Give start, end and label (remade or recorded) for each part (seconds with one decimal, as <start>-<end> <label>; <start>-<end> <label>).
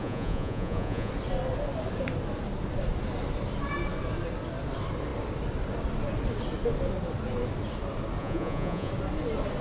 0.0-1.1 remade; 1.1-8.2 recorded; 8.2-8.9 remade; 8.9-9.6 recorded